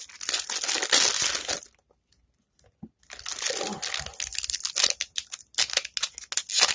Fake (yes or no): no